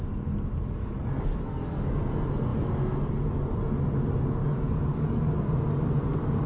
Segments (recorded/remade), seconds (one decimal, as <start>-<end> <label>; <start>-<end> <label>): 0.0-0.8 recorded; 0.8-2.0 remade; 2.0-4.4 recorded; 4.4-5.4 remade; 5.4-6.5 recorded